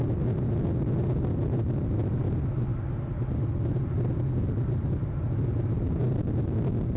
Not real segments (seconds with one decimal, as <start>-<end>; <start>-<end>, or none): none

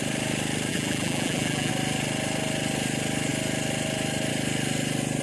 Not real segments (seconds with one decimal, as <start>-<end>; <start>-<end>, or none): 0.7-1.7

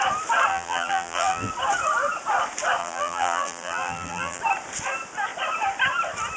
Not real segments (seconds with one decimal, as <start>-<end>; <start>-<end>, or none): 0.5-1.5; 2.8-4.4

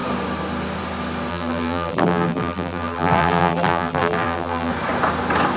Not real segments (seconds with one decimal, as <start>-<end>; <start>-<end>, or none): 1.3-4.7

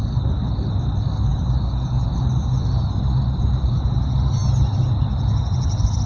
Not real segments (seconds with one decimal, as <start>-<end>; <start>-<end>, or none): none